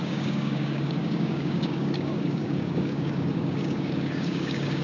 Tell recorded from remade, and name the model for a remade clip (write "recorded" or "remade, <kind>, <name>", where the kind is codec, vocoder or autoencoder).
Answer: remade, codec, DAC